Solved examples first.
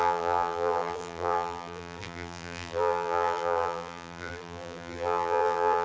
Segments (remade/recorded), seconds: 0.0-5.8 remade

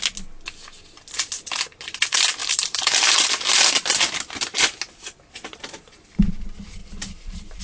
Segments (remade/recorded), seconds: 0.0-2.4 recorded; 2.4-3.3 remade; 3.3-6.8 recorded; 6.8-7.6 remade

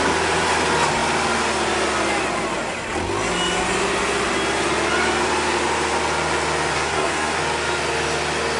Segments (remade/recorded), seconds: 0.0-6.7 recorded; 6.7-7.4 remade; 7.4-8.6 recorded